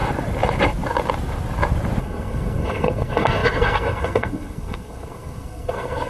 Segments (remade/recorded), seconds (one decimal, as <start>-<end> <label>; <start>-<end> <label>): 0.0-2.0 recorded; 2.0-6.1 remade